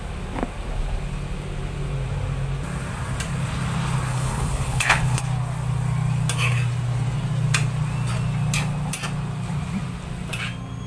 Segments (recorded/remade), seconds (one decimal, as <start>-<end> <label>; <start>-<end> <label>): 0.0-4.1 recorded; 4.1-5.2 remade; 5.2-10.9 recorded